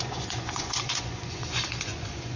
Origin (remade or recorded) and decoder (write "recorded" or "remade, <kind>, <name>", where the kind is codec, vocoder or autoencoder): remade, vocoder, Vocos